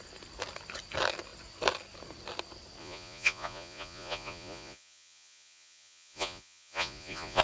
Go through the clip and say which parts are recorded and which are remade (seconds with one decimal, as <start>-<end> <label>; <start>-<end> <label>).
0.0-2.8 recorded; 2.8-7.4 remade